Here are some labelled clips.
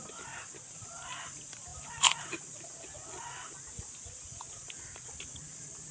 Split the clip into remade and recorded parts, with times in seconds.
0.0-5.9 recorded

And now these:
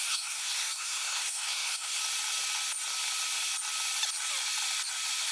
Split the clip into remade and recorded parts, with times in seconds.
0.0-2.0 remade; 2.0-5.3 recorded